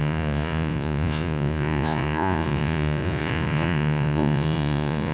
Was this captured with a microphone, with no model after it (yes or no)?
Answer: no